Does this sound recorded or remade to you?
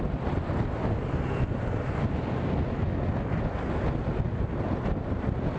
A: recorded